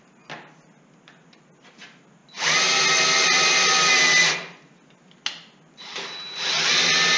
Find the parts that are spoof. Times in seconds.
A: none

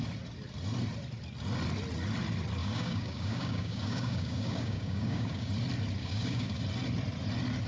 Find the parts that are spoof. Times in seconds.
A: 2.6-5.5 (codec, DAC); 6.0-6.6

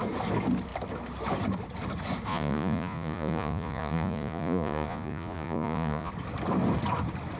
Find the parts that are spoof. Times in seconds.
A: 2.3-6.1 (vocoder, Vocos)